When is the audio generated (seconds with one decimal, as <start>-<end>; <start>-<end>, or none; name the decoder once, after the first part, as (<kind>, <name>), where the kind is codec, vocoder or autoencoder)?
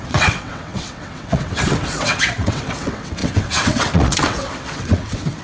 0.0-5.4 (vocoder, WaveNeXt)